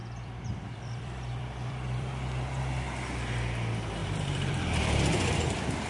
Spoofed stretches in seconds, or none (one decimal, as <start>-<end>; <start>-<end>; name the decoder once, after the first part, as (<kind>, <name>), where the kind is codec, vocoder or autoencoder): 0.0-2.1 (vocoder, BigVGAN v2); 4.0-5.4